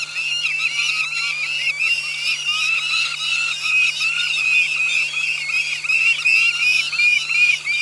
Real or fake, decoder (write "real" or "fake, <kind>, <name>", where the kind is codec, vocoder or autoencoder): real